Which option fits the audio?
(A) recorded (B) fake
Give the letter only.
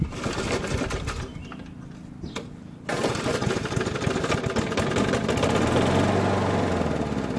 A